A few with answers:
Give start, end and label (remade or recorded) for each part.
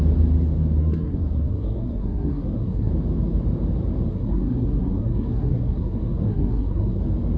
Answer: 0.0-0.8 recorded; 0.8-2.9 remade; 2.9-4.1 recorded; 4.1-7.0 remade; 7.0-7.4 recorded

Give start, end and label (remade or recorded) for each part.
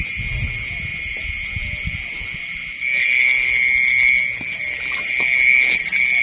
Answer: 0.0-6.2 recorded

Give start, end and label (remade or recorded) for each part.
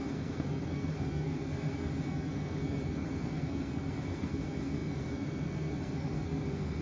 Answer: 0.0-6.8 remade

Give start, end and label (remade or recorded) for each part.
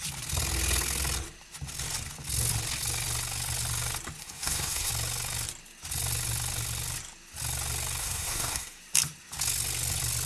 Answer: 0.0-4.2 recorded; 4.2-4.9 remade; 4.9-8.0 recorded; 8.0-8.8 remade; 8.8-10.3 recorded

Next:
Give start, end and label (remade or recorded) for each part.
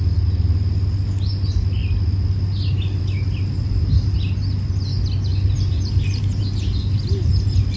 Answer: 0.0-7.8 recorded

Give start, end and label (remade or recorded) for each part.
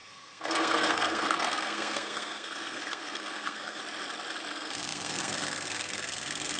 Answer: 0.0-3.8 remade; 3.8-4.5 recorded; 4.5-6.6 remade